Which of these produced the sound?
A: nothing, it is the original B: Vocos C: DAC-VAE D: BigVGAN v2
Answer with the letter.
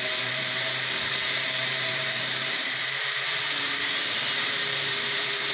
D